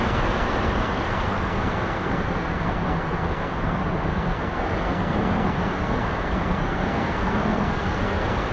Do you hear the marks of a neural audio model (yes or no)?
yes